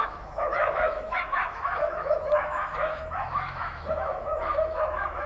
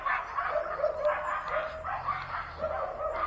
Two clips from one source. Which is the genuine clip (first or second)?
second